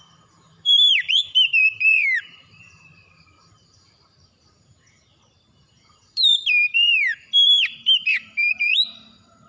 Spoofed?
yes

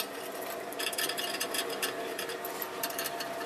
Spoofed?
yes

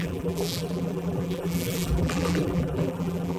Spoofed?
yes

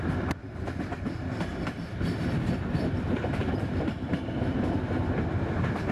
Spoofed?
yes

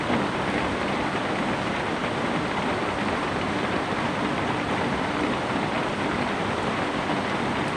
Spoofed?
yes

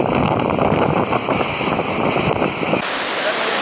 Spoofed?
no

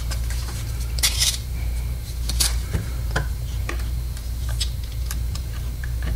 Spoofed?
yes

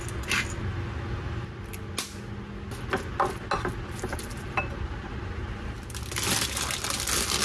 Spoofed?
no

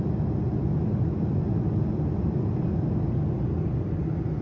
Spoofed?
no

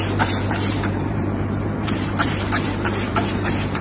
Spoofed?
yes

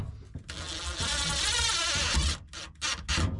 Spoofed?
no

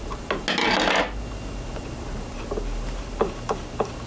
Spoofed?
no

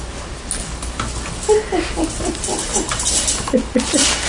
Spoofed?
no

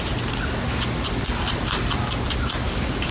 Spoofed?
no